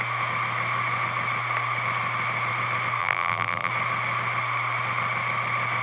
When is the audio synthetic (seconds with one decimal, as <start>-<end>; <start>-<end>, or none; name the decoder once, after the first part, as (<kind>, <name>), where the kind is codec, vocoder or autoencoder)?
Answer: 3.0-3.7 (vocoder, BigVGAN v2)

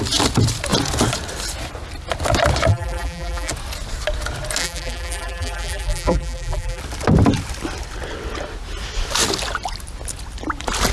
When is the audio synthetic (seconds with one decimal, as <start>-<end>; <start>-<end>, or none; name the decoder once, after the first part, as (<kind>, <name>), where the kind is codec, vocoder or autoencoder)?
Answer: 2.7-3.5 (vocoder, BigVGAN v2); 4.6-6.8

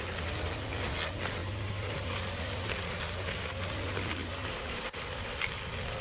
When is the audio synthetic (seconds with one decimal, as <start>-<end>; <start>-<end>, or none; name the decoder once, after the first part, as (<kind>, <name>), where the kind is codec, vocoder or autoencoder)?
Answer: 1.4-2.7 (vocoder, BigVGAN v2); 4.2-5.3

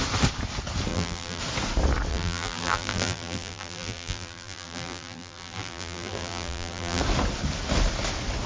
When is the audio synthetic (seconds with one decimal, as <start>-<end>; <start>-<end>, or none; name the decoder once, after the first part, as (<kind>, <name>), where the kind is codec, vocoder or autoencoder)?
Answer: 0.9-1.4 (vocoder, BigVGAN v2); 2.1-7.0

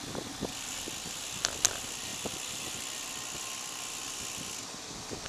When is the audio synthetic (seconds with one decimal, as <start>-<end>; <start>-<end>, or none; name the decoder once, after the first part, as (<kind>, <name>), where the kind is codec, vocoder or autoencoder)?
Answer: none